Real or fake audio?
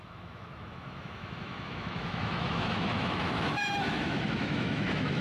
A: fake